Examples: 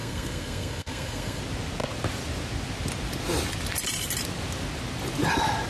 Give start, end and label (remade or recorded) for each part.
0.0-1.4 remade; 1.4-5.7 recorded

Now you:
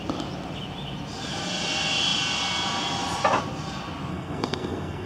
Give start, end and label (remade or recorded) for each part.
0.0-4.1 recorded; 4.1-5.1 remade

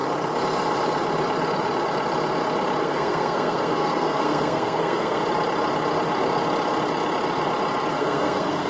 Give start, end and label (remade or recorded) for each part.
0.0-2.8 recorded; 2.8-5.2 remade; 5.2-7.9 recorded; 7.9-8.7 remade

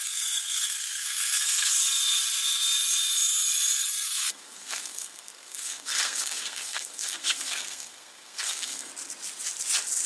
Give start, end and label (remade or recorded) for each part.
0.0-1.7 remade; 1.7-3.9 recorded; 3.9-8.9 remade; 8.9-10.1 recorded

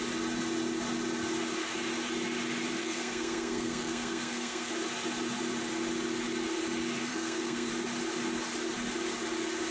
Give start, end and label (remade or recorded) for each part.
0.0-2.8 recorded; 2.8-4.7 remade; 4.7-7.1 recorded; 7.1-7.7 remade; 7.7-9.7 recorded

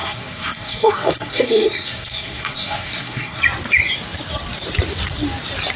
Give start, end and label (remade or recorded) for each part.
0.0-3.4 remade; 3.4-5.8 recorded